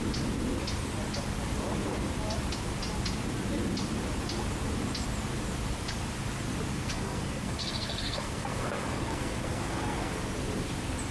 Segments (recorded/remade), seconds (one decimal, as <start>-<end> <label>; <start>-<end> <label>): 0.0-6.7 recorded; 6.7-10.1 remade; 10.1-11.1 recorded